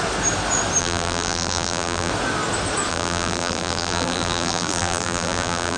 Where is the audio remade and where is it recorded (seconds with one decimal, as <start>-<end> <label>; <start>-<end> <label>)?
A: 0.0-0.8 recorded; 0.8-2.1 remade; 2.1-2.9 recorded; 2.9-5.8 remade